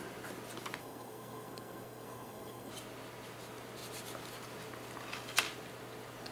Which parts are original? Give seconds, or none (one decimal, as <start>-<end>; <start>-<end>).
0.0-0.8; 2.7-6.3